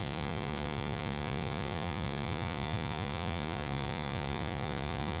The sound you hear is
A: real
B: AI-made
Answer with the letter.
B